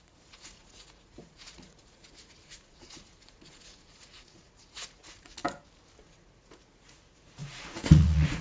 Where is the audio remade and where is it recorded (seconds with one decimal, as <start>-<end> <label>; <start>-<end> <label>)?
0.0-5.4 remade; 5.4-6.0 recorded; 6.0-8.4 remade